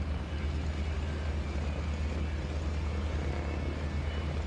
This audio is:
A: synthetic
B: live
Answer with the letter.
B